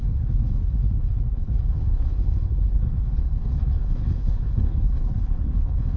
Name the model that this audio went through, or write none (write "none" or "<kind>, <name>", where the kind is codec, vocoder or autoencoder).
codec, HILCodec